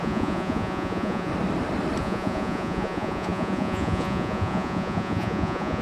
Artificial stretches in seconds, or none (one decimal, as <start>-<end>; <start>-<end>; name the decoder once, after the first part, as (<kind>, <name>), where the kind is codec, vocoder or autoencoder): 0.0-1.3 (vocoder, Vocos); 2.0-5.8